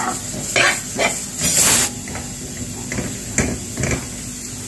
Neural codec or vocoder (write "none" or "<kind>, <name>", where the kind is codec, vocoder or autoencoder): none